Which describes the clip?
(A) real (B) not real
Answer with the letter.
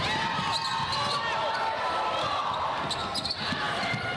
A